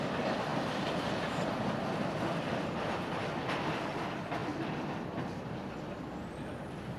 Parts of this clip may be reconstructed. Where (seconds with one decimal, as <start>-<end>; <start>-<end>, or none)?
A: none